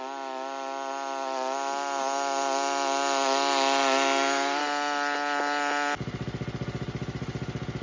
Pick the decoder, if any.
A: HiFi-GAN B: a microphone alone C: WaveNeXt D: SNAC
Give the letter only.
B